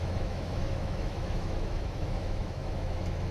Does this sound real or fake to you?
fake